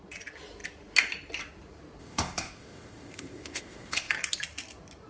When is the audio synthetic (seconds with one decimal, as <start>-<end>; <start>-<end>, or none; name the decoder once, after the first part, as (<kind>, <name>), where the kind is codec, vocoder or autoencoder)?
2.0-4.1 (codec, ZipCodec)